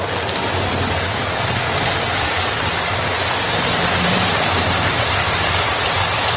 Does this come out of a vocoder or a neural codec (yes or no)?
no